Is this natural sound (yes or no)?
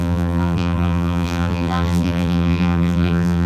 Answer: no